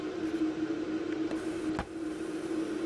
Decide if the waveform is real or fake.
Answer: real